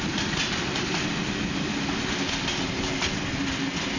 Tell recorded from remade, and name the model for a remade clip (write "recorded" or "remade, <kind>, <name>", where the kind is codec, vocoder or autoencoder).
recorded